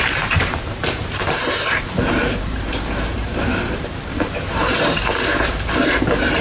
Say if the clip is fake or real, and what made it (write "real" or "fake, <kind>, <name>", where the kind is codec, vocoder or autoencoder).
fake, vocoder, BigVGAN v2